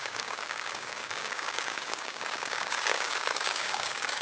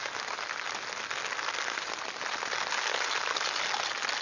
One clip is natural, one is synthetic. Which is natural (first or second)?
second